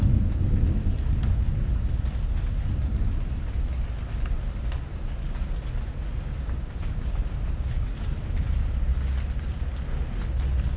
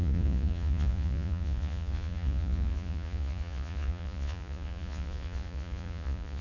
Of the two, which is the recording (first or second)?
first